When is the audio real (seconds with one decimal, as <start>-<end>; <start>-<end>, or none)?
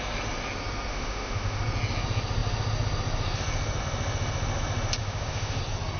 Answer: 0.0-0.9; 1.6-5.0; 5.6-6.0